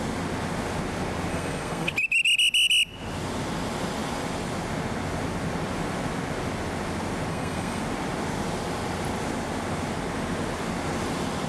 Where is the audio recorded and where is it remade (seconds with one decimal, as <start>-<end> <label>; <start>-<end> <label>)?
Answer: 0.0-1.3 recorded; 1.3-1.9 remade; 1.9-7.3 recorded; 7.3-7.8 remade; 7.8-11.5 recorded